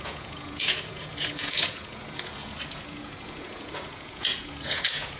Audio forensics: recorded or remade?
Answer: remade